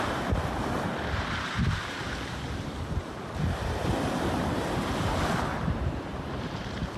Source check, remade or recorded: remade